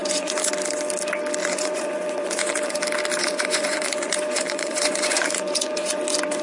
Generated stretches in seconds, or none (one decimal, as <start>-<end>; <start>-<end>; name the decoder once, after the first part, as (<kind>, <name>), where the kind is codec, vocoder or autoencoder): 0.0-0.5 (vocoder, Vocos); 1.4-2.8; 3.2-6.0